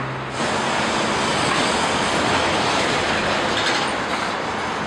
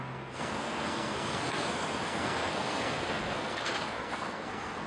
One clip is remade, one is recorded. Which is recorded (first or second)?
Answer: first